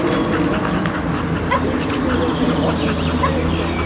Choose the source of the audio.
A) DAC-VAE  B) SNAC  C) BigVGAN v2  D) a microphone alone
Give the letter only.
D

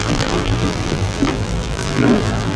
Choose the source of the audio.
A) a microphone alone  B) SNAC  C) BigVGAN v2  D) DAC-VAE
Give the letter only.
C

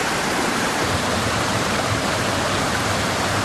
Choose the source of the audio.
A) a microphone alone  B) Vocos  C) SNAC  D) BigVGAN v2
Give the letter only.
D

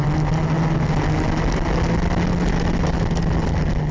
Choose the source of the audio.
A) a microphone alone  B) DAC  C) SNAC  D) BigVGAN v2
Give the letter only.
A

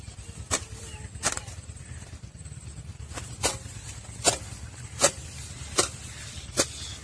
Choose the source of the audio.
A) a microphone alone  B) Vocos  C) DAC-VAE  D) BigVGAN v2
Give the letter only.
D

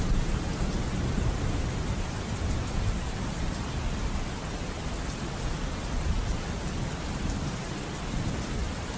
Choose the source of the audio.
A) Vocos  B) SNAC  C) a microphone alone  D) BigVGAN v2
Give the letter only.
C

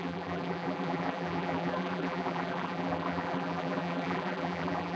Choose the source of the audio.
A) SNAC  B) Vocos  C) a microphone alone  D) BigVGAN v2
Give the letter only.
D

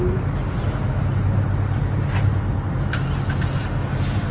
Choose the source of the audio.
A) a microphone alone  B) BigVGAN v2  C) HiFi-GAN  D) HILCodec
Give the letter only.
A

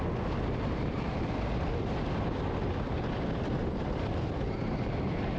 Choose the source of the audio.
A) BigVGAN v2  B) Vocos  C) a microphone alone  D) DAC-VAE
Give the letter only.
C